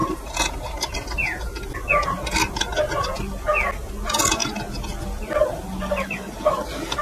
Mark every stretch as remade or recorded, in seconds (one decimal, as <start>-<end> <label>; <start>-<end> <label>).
0.0-7.0 recorded